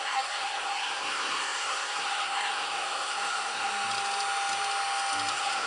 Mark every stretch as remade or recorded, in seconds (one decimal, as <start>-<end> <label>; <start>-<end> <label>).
0.0-3.7 remade; 3.7-5.3 recorded; 5.3-5.7 remade